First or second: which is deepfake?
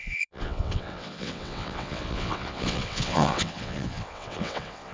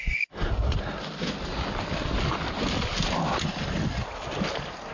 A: first